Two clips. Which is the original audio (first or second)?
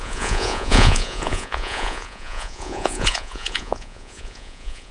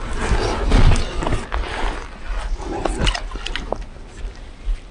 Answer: second